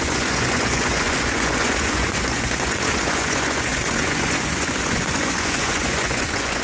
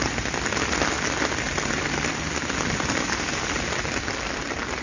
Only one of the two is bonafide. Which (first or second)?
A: second